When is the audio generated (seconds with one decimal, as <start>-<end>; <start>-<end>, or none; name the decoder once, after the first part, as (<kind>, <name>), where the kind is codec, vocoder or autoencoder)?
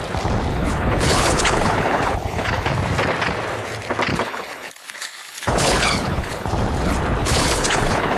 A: 0.5-2.7 (codec, HILCodec); 4.1-6.5; 7.2-8.2